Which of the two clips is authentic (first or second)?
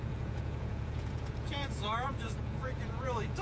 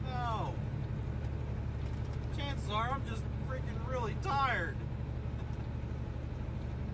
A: second